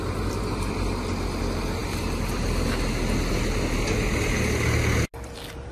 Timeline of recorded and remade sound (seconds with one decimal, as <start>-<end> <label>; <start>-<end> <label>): 0.0-5.7 recorded